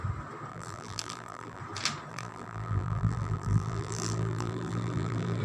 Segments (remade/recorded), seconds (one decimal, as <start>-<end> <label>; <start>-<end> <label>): 0.0-0.5 recorded; 0.5-1.6 remade; 1.6-2.1 recorded; 2.1-5.4 remade

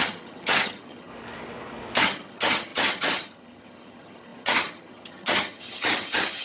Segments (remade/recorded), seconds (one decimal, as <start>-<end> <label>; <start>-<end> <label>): 0.0-1.1 remade; 1.1-2.0 recorded; 2.0-6.4 remade

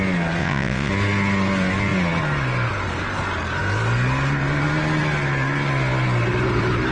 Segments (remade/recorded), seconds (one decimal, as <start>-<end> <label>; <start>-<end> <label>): 0.0-0.4 recorded; 0.4-0.9 remade; 0.9-6.9 recorded

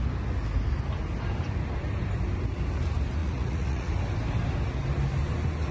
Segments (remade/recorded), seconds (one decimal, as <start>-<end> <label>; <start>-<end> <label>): 0.0-3.2 recorded; 3.2-3.9 remade; 3.9-5.7 recorded

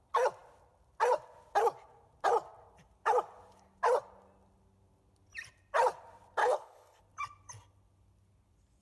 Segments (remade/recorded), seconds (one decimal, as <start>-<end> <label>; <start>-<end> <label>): 0.0-6.4 recorded; 6.4-7.0 remade; 7.0-8.8 recorded

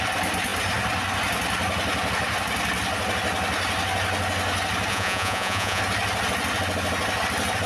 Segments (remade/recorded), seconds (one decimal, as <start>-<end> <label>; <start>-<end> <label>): 0.0-4.9 recorded; 4.9-5.8 remade; 5.8-7.7 recorded

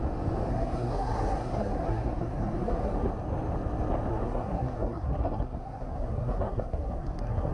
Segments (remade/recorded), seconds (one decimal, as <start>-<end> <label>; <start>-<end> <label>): 0.0-0.5 recorded; 0.5-3.1 remade; 3.1-4.1 recorded; 4.1-7.5 remade